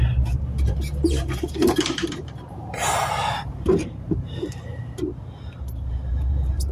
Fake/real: fake